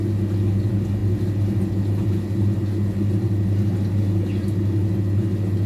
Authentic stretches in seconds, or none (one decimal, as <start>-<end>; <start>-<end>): 0.0-5.7